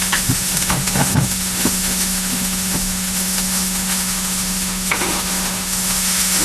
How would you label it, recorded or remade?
remade